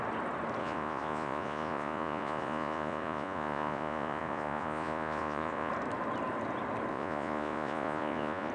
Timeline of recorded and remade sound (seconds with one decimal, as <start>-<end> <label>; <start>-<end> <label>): 0.0-0.6 recorded; 0.6-5.7 remade; 5.7-6.9 recorded; 6.9-8.5 remade